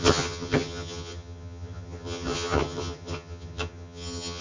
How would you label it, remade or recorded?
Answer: remade